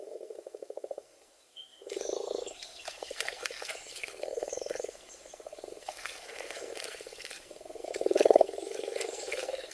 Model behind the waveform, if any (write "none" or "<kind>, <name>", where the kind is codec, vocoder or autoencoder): codec, SNAC